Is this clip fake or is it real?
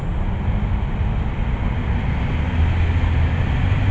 real